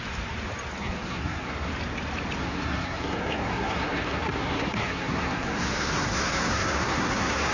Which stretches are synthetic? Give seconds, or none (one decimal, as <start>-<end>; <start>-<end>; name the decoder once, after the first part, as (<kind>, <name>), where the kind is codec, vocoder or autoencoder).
0.8-1.7 (codec, SNAC); 2.4-7.5